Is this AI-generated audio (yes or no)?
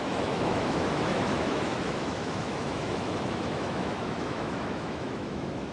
yes